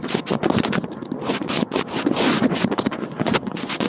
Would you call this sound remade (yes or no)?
yes